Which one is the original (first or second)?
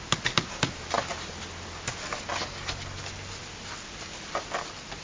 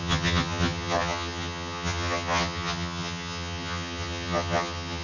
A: first